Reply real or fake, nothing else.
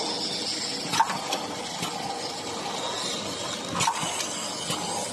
real